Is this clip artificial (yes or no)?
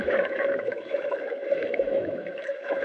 yes